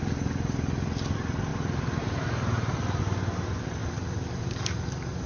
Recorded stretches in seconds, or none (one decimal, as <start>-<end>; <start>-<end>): 0.0-1.5; 3.0-5.3